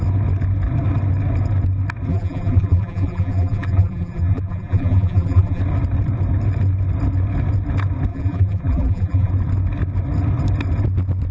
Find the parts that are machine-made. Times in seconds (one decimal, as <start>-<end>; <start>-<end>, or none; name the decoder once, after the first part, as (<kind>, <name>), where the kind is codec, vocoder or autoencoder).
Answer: 2.1-5.6 (vocoder, BigVGAN v2); 8.1-9.3